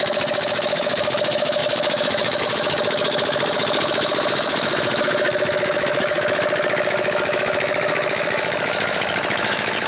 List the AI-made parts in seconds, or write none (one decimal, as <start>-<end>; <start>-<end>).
0.0-9.9